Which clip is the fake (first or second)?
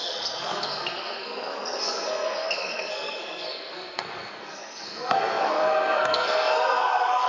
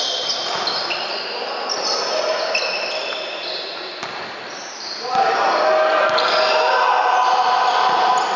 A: first